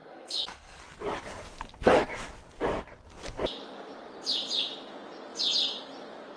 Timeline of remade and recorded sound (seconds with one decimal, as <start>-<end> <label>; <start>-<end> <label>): 0.0-0.8 remade; 0.8-6.4 recorded